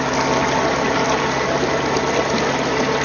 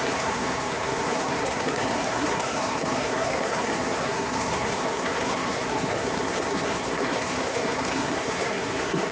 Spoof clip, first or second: second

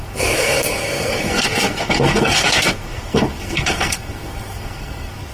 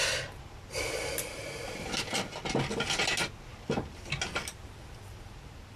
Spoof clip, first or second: first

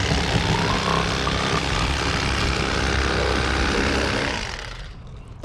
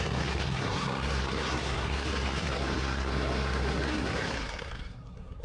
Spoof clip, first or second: second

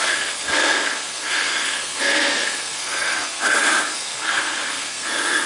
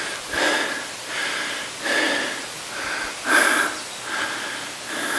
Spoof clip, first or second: first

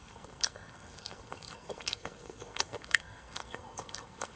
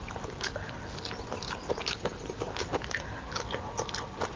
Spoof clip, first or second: first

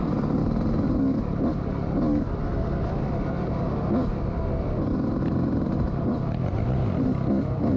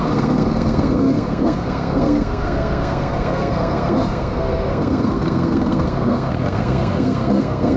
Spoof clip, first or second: second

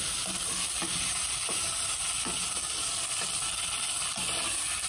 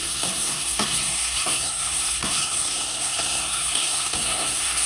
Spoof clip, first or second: second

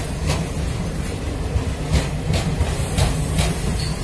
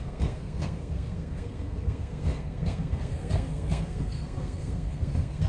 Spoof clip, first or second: second